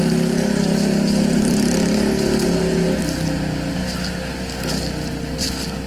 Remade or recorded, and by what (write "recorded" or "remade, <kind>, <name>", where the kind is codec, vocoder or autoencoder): recorded